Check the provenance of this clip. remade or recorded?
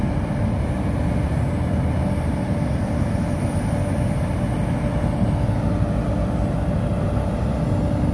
recorded